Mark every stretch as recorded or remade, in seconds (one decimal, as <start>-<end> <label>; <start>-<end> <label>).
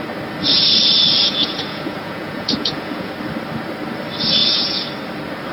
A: 0.0-1.2 recorded; 1.2-3.1 remade; 3.1-4.4 recorded; 4.4-4.9 remade; 4.9-5.5 recorded